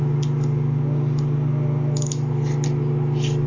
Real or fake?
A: real